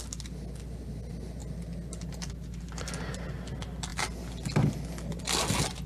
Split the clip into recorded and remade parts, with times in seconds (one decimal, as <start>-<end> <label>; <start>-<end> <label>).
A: 0.0-5.9 recorded